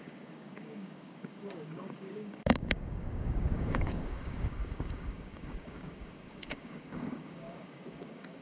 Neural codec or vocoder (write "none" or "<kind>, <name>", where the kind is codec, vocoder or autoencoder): codec, DAC